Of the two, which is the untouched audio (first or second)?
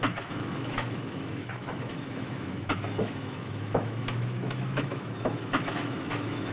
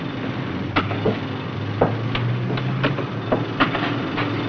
second